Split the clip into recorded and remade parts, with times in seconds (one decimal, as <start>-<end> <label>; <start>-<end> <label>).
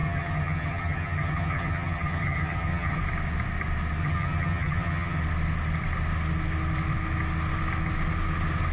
0.0-3.0 remade; 3.0-4.0 recorded; 4.0-5.2 remade; 5.2-8.7 recorded